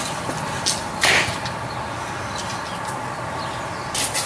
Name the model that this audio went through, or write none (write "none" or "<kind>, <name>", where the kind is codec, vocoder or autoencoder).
none